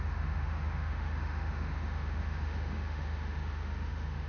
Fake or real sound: fake